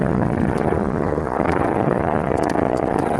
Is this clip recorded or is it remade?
remade